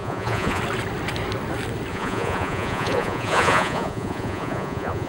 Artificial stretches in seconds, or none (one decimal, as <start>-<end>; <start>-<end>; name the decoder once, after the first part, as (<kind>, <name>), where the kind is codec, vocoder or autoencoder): 0.0-0.6 (vocoder, Vocos); 1.9-5.1